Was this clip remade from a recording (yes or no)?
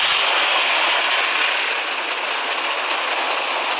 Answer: no